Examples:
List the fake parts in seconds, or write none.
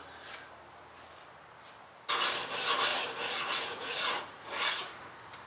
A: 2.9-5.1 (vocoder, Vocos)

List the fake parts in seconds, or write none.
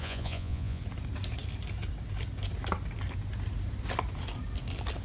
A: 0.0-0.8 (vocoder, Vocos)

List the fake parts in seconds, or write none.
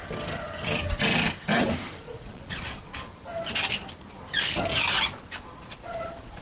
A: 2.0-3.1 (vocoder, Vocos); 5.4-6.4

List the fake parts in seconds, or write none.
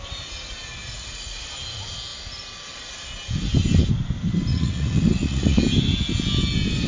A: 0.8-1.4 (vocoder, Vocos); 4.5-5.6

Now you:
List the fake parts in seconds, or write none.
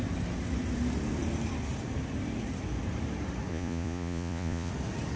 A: 3.5-4.7 (vocoder, Vocos)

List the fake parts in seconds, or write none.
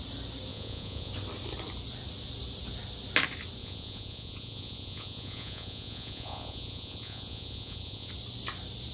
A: 0.5-1.1 (vocoder, Vocos); 3.6-8.1